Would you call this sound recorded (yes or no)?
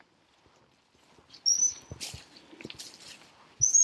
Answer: yes